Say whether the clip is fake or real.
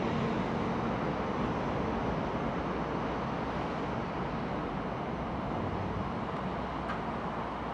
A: real